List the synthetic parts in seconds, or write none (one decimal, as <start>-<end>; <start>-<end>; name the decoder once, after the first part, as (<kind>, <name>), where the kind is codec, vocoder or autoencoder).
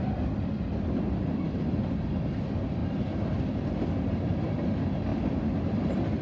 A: none